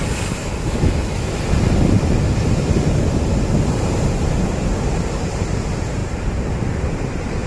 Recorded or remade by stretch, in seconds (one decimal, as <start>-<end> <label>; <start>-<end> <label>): 0.0-0.4 recorded; 0.4-1.4 remade; 1.4-7.5 recorded